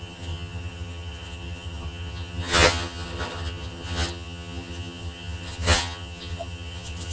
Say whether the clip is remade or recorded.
remade